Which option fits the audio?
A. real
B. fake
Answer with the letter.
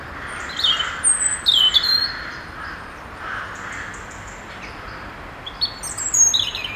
B